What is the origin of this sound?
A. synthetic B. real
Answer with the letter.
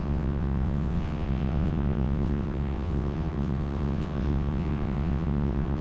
A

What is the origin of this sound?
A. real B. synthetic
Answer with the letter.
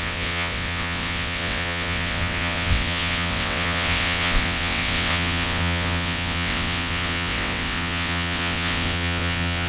B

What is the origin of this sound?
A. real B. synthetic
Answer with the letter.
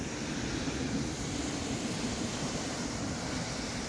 A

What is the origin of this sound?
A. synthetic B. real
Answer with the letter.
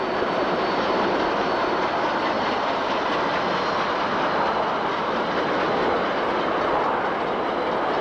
B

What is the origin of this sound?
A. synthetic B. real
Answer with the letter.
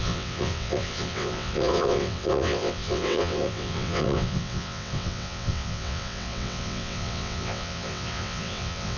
A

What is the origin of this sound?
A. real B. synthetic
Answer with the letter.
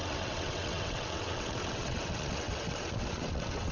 B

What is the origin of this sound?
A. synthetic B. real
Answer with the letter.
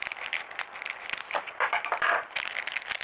B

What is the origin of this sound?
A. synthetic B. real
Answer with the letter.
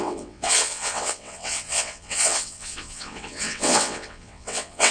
A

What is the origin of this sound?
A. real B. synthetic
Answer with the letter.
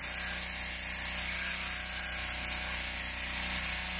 A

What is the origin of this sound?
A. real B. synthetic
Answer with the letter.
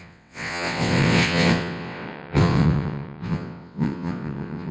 B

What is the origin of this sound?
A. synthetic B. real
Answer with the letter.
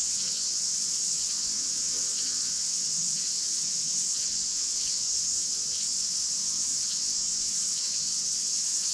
A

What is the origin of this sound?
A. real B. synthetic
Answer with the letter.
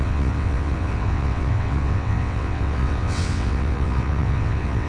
B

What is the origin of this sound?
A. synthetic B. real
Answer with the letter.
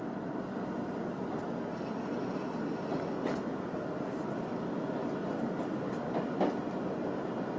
B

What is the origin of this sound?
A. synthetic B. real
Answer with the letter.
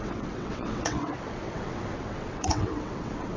A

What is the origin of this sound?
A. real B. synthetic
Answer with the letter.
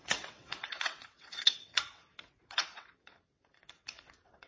B